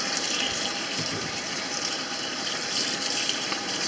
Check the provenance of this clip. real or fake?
fake